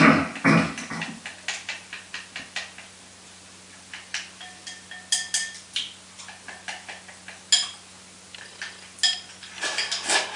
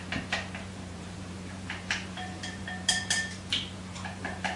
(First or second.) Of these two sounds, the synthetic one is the second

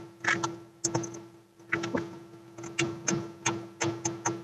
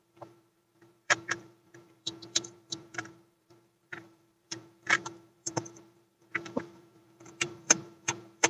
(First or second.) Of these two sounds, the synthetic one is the second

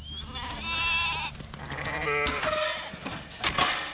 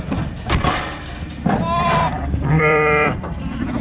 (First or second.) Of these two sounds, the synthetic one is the second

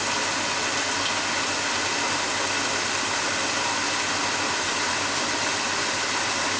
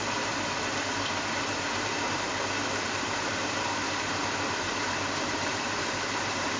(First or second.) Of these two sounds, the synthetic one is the second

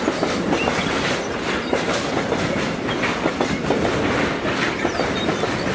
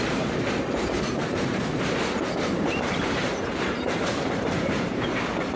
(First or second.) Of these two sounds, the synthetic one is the second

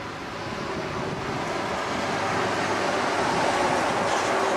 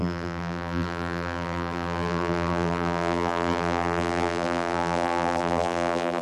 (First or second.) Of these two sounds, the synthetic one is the second